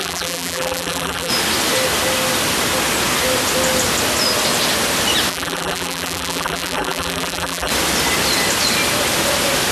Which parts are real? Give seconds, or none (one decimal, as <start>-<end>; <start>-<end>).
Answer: 1.3-5.3; 7.7-9.7